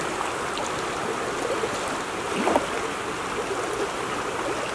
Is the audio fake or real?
real